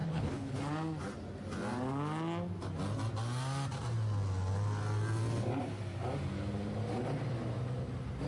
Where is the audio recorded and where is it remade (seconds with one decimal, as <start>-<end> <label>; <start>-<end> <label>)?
0.0-0.6 remade; 0.6-8.3 recorded